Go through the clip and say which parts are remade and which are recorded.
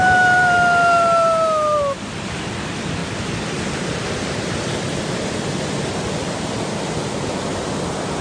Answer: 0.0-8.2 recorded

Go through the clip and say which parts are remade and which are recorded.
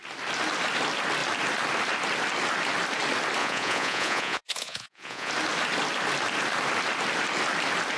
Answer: 0.0-3.4 recorded; 3.4-5.3 remade; 5.3-8.0 recorded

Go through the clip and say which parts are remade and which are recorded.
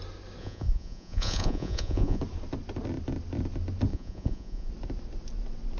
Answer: 0.0-0.4 recorded; 0.4-2.2 remade; 2.2-3.9 recorded; 3.9-4.7 remade; 4.7-5.8 recorded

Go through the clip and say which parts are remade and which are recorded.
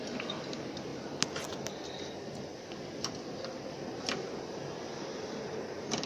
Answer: 0.0-6.1 recorded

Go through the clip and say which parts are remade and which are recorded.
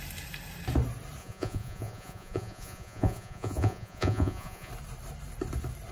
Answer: 0.0-1.2 recorded; 1.2-4.7 remade; 4.7-5.9 recorded